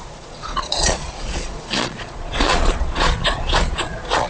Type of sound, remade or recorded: remade